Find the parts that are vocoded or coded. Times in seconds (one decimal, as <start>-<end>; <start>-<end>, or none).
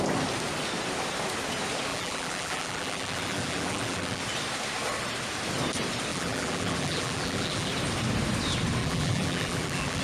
1.9-4.2; 6.1-7.7; 8.8-10.0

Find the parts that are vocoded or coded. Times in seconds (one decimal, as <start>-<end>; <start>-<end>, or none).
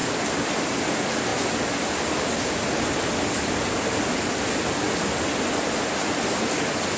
0.0-0.9; 1.3-4.6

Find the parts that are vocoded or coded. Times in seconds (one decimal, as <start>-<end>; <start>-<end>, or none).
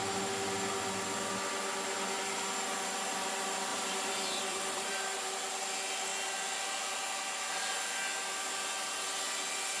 3.7-5.3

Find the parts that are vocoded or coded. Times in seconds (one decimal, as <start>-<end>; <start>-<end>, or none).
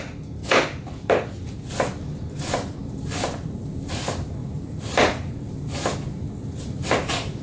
2.8-3.8; 4.4-5.5